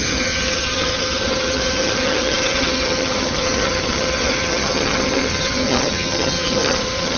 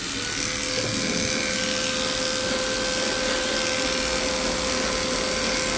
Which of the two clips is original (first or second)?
second